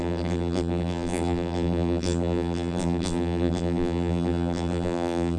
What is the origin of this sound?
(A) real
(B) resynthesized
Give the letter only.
B